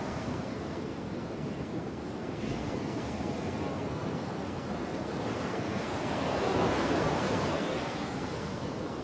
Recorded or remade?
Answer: remade